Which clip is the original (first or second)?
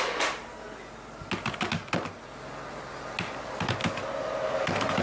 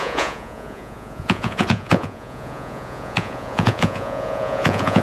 first